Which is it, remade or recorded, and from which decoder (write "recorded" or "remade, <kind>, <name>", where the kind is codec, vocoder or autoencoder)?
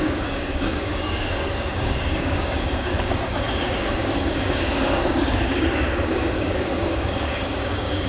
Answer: remade, codec, DAC